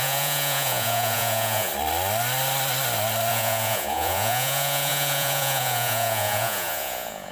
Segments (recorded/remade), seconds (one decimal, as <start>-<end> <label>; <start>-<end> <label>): 0.0-1.7 remade; 1.7-3.3 recorded; 3.3-7.3 remade